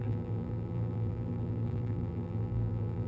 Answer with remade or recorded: remade